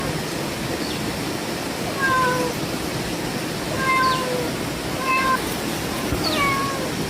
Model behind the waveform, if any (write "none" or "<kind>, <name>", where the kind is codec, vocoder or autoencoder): none